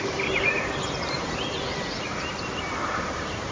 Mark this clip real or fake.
fake